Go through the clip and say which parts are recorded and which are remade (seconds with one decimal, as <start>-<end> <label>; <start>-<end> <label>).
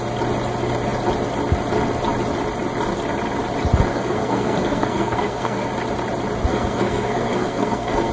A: 0.0-3.9 recorded; 3.9-5.7 remade; 5.7-6.5 recorded; 6.5-8.1 remade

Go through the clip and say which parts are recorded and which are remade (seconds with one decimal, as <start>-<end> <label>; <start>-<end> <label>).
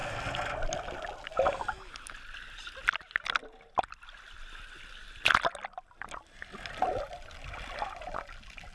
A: 0.0-8.7 recorded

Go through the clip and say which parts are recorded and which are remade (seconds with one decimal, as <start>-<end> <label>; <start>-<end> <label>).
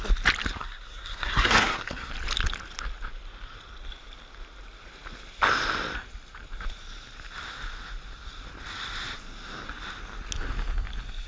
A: 0.0-0.6 recorded; 0.6-2.1 remade; 2.1-11.3 recorded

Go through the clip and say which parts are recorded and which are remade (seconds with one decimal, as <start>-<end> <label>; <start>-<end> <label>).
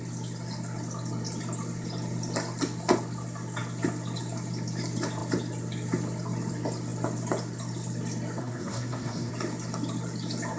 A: 0.0-8.4 recorded; 8.4-9.3 remade; 9.3-10.6 recorded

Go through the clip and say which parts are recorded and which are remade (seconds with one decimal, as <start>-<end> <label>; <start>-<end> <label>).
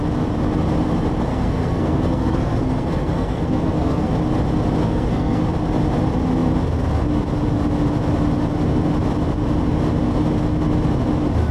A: 0.0-1.3 recorded; 1.3-4.1 remade; 4.1-4.8 recorded; 4.8-5.4 remade; 5.4-11.5 recorded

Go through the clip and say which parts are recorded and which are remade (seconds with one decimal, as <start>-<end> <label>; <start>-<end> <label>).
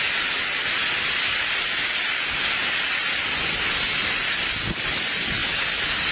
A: 0.0-6.1 recorded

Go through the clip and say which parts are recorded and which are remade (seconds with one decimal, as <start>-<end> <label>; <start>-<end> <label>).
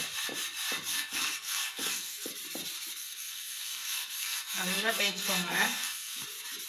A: 0.0-0.9 recorded; 0.9-2.3 remade; 2.3-3.0 recorded; 3.0-6.2 remade; 6.2-6.7 recorded